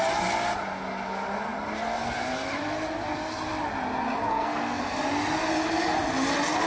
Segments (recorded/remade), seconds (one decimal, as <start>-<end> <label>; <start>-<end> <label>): 0.0-4.3 recorded; 4.3-4.8 remade; 4.8-6.7 recorded